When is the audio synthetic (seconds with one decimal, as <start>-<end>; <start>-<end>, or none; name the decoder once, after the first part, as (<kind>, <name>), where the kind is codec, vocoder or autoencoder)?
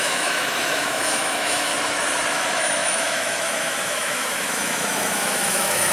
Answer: 0.0-1.7 (autoencoder, DAC-VAE); 2.3-5.9